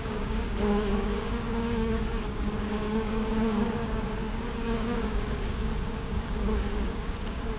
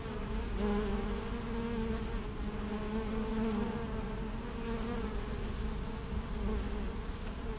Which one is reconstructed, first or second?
first